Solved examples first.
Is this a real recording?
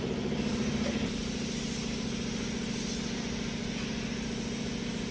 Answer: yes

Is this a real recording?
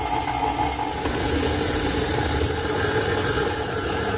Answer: yes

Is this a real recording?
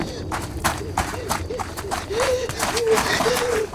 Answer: no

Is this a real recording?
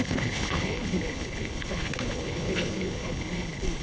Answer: no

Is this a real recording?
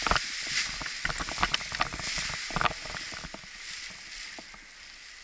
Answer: yes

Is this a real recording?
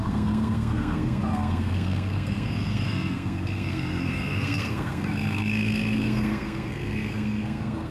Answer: no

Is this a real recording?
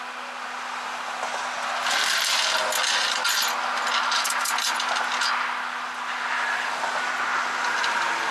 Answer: yes